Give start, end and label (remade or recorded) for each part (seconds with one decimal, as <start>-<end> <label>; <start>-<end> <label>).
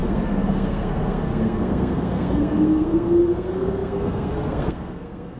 0.0-5.4 remade